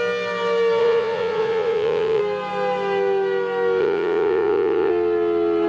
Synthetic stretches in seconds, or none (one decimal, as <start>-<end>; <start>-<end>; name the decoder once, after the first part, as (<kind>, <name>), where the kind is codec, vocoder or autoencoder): 0.8-2.2 (vocoder, Vocos); 3.8-4.9